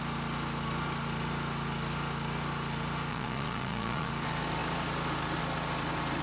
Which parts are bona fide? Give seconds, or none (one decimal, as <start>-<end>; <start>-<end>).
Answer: 0.0-3.1; 4.1-6.2